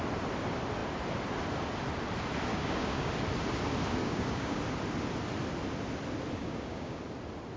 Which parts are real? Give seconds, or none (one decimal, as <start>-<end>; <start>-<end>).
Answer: 0.0-2.5; 3.1-4.0; 4.6-6.4; 7.0-7.6